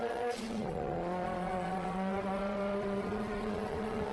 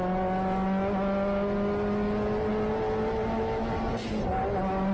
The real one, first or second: second